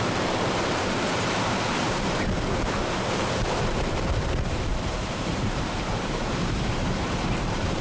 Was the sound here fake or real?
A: fake